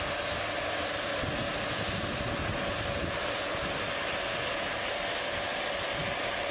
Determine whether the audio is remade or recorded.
recorded